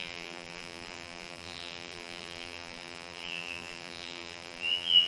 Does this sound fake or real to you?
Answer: fake